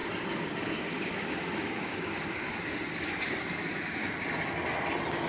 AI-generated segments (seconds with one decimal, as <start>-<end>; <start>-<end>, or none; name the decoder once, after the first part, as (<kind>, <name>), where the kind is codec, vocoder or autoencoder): 0.6-3.6 (codec, DAC)